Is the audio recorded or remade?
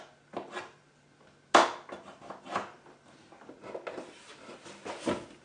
recorded